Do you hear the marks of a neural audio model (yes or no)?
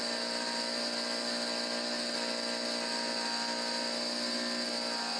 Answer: no